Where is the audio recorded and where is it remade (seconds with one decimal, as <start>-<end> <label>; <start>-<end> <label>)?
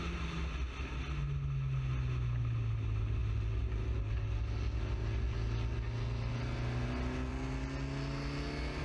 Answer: 0.0-8.8 recorded